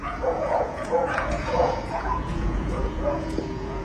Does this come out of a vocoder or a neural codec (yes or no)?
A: yes